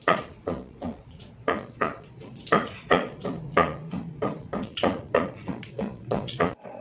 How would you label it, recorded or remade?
remade